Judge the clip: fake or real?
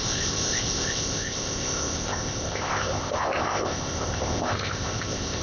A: fake